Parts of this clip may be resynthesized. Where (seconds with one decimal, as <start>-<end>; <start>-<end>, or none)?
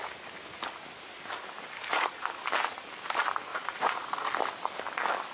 1.9-2.4; 3.5-4.3